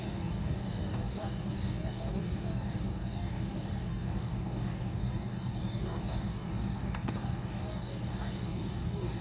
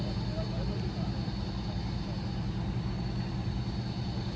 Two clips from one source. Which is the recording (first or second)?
second